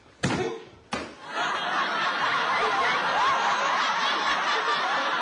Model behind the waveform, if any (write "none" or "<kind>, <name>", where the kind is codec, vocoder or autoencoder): none